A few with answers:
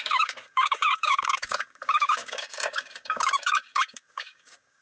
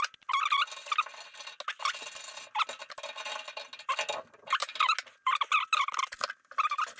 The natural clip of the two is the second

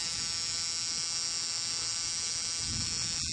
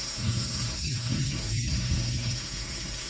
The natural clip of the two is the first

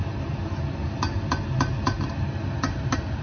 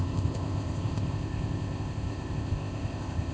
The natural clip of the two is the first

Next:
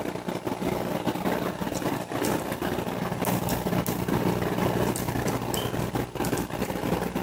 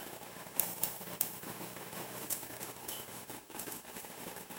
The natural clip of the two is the first